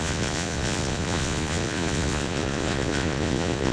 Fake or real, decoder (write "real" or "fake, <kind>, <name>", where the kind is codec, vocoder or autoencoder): fake, vocoder, Vocos